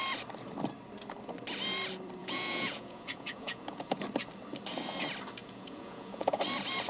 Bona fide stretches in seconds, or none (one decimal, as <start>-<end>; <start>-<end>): 0.0-2.2; 4.0-5.4; 6.4-6.9